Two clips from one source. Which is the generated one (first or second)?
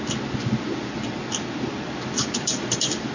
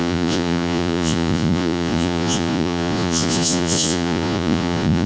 second